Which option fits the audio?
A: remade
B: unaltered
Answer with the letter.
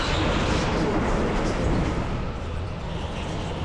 B